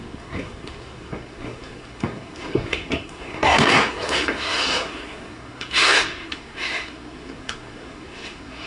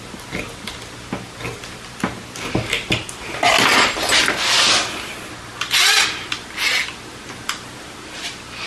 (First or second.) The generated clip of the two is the first